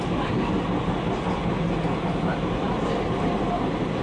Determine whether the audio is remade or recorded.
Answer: recorded